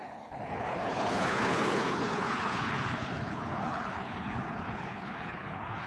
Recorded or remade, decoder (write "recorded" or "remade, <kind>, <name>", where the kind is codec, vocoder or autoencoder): remade, codec, HILCodec